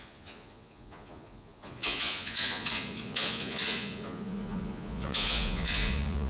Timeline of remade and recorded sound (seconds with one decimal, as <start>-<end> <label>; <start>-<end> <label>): 0.0-6.3 remade